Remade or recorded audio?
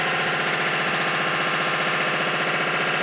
recorded